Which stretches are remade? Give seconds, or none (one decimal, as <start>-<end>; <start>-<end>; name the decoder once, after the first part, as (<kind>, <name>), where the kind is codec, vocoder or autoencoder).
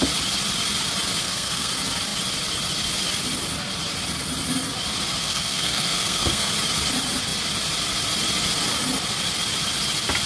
1.2-1.7 (codec, SNAC); 5.2-6.5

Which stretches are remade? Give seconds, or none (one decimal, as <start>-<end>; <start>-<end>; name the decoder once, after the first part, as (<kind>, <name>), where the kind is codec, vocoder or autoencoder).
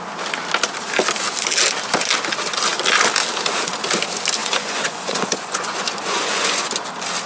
4.4-6.7 (vocoder, Vocos)